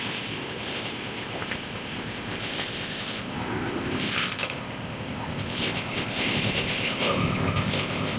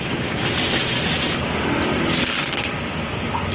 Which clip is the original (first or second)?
second